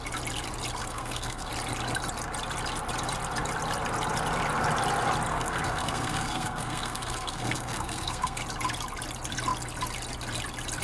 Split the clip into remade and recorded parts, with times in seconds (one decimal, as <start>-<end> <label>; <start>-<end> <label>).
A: 0.0-0.8 recorded; 0.8-1.5 remade; 1.5-5.3 recorded; 5.3-8.4 remade; 8.4-10.8 recorded